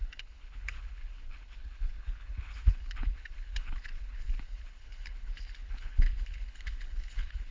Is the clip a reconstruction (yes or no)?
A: yes